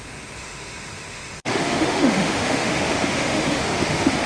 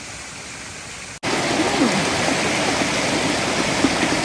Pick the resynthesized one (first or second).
first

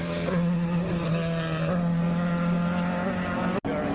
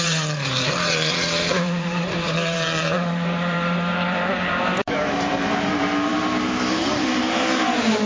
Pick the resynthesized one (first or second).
second